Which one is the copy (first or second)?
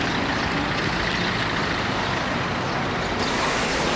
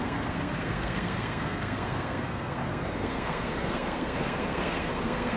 second